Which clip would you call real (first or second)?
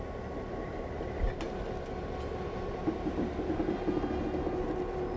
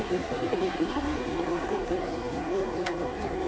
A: first